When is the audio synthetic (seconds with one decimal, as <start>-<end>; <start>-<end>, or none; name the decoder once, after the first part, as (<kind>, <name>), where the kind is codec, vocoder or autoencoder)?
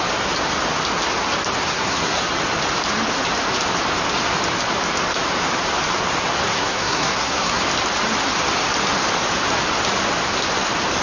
1.7-2.2 (codec, SNAC); 6.5-7.6